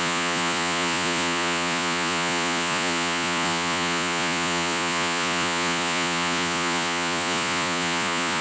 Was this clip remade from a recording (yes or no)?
yes